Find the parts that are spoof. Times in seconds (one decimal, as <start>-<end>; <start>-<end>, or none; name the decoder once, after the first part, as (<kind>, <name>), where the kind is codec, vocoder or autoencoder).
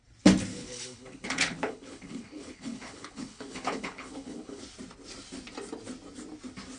0.5-4.6 (codec, HILCodec)